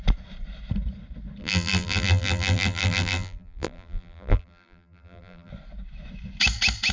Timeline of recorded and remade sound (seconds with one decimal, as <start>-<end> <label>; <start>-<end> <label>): 0.0-1.4 recorded; 1.4-5.5 remade; 5.5-6.9 recorded